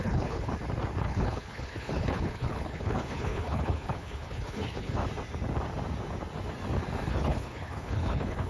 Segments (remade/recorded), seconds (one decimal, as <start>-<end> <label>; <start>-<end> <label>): 0.0-0.5 remade; 0.5-1.0 recorded; 1.0-5.0 remade; 5.0-7.1 recorded; 7.1-8.5 remade